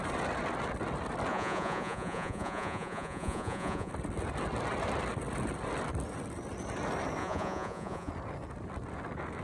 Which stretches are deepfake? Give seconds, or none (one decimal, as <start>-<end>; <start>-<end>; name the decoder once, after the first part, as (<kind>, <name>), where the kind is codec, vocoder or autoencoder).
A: 1.3-3.9 (vocoder, Vocos); 7.2-8.1